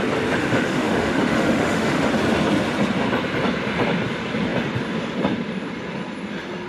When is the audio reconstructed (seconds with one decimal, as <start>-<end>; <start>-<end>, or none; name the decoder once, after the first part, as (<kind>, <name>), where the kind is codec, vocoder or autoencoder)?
0.4-2.1 (autoencoder, DAC-VAE)